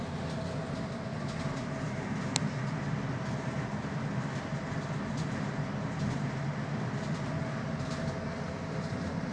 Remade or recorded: recorded